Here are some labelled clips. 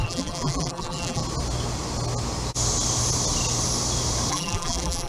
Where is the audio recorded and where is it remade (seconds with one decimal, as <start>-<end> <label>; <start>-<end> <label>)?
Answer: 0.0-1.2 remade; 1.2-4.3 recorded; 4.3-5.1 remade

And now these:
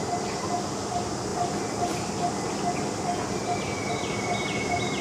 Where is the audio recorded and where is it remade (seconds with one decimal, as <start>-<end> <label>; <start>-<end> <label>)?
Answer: 0.0-5.0 recorded

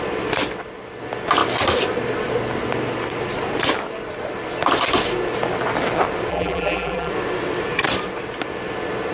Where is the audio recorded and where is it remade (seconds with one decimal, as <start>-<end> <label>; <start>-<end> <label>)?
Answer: 0.0-6.3 recorded; 6.3-7.1 remade; 7.1-9.1 recorded

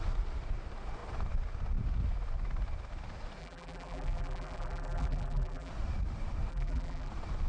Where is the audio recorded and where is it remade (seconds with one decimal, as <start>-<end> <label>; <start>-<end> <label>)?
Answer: 0.0-3.4 recorded; 3.4-5.7 remade; 5.7-6.5 recorded; 6.5-7.1 remade; 7.1-7.5 recorded